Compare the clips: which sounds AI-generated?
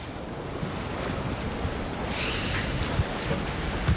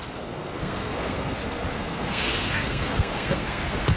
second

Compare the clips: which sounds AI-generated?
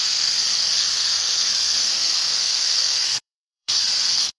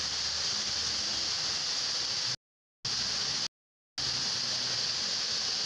first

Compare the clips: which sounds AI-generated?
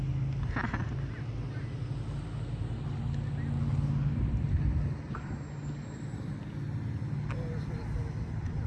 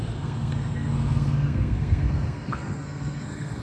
second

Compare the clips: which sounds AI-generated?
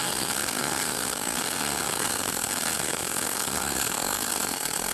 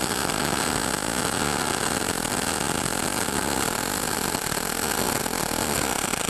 first